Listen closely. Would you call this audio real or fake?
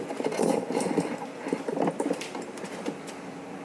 fake